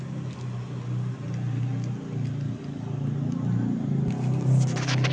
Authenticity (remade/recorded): recorded